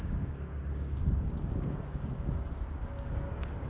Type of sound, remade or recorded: remade